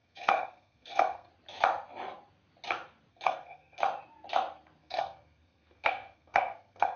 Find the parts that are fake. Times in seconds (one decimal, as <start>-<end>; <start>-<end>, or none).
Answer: 0.0-1.3; 3.1-3.8; 4.8-7.0